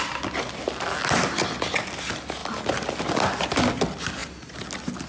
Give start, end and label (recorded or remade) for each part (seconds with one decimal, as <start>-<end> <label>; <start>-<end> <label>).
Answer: 0.0-5.1 recorded